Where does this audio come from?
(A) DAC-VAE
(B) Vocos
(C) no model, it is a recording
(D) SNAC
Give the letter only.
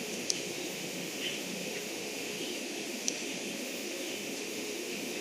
A